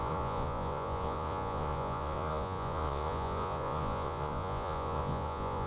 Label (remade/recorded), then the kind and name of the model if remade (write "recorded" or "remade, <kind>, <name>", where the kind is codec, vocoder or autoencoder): remade, vocoder, Vocos